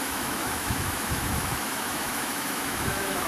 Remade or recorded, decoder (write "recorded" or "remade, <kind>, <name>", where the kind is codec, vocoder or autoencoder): remade, autoencoder, DAC-VAE